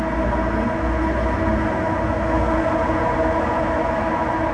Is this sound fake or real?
real